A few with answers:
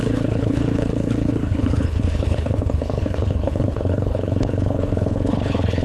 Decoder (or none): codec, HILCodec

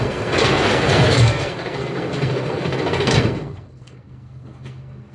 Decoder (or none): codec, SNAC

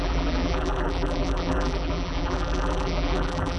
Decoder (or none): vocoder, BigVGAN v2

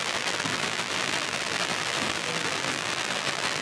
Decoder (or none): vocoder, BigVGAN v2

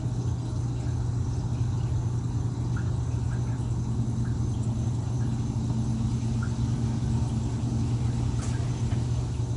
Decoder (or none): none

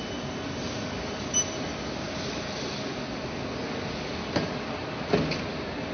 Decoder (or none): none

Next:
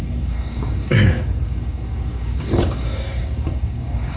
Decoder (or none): codec, DAC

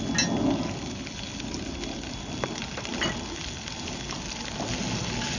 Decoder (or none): none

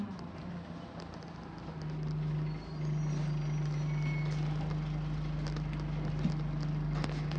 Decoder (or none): none